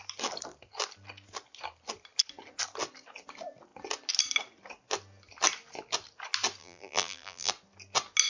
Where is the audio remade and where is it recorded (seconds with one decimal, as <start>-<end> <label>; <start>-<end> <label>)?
0.0-6.6 recorded; 6.6-7.5 remade; 7.5-8.3 recorded